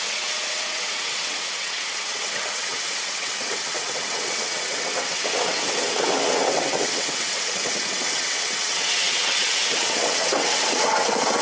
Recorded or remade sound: remade